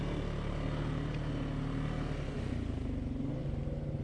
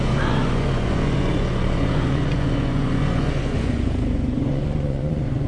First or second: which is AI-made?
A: second